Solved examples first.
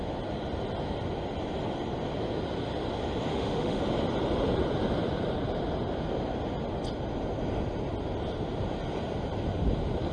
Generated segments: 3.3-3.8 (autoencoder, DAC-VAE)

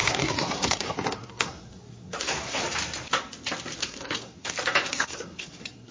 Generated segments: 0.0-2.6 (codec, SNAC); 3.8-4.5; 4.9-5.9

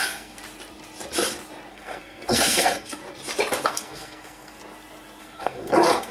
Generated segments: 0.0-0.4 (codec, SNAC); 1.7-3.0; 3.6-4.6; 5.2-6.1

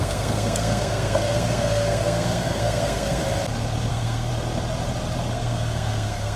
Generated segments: 0.0-3.2 (codec, SNAC); 3.9-4.3; 5.3-6.4